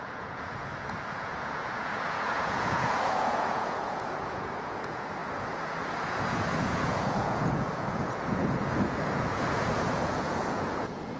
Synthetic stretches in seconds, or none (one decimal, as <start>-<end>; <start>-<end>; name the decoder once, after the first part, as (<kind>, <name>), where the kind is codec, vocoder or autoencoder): 0.0-11.2 (vocoder, Vocos)